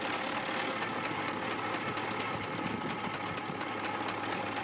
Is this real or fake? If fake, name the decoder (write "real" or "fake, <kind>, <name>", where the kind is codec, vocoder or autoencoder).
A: real